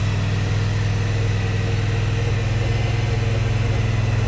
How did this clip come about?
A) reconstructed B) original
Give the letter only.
B